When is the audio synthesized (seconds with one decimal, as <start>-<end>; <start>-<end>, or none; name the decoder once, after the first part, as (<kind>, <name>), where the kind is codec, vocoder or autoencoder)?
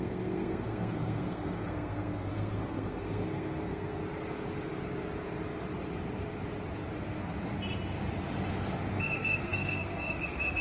0.0-4.0 (codec, SNAC); 8.9-10.6